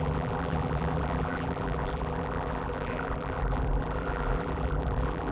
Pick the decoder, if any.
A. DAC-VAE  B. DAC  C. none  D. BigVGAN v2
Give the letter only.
D